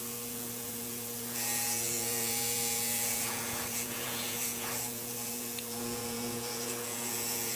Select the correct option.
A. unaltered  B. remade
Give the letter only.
B